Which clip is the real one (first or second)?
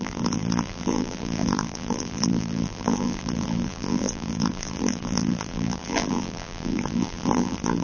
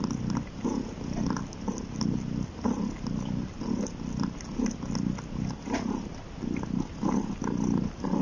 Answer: second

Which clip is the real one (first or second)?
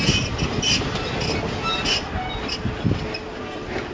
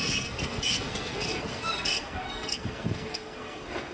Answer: first